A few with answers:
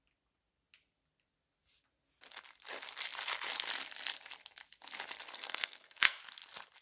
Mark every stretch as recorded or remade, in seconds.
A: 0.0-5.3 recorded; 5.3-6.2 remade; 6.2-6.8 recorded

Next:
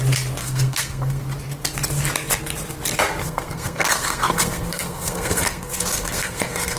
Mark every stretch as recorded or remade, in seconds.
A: 0.0-0.4 recorded; 0.4-1.2 remade; 1.2-3.2 recorded; 3.2-6.8 remade

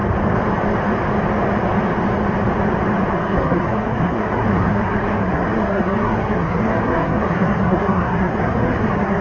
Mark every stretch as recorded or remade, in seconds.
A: 0.0-3.1 recorded; 3.1-9.2 remade

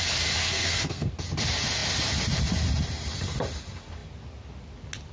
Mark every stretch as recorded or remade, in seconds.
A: 0.0-0.4 recorded; 0.4-1.1 remade; 1.1-5.1 recorded